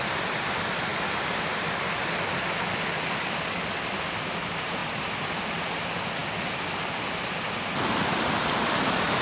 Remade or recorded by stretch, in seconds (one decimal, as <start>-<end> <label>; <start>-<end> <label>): 0.0-9.2 recorded